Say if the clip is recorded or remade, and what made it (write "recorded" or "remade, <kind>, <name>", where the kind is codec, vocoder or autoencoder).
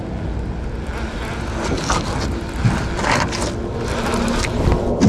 recorded